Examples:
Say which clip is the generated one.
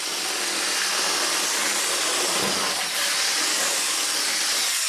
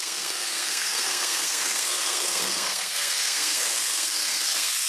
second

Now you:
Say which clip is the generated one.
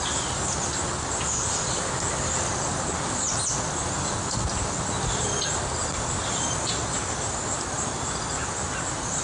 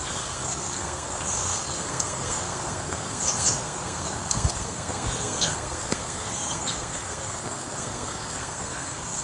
second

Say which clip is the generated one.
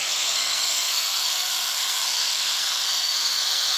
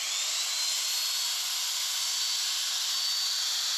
first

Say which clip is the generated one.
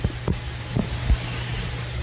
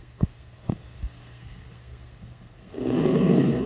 second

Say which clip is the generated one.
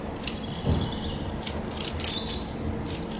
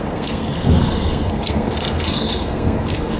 second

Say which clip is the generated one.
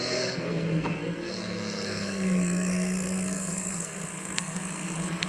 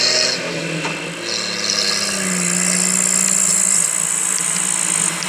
first